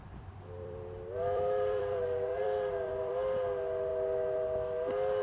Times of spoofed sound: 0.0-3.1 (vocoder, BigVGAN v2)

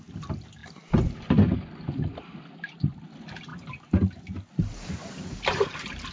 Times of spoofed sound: none

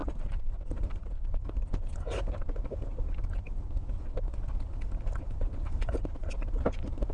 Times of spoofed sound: none

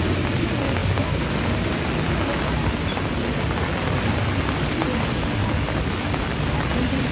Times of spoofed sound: none

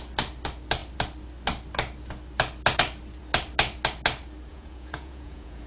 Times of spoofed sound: 4.5-5.7 (vocoder, Vocos)

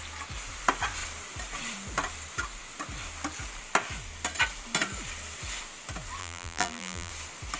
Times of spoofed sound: 6.2-7.1 (vocoder, BigVGAN v2)

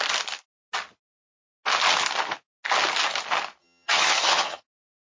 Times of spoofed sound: 3.6-4.6 (vocoder, HiFi-GAN)

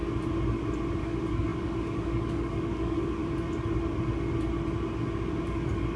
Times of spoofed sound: 1.0-3.2 (codec, DAC); 5.4-6.0